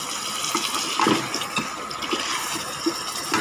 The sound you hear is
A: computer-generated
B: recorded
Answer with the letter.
B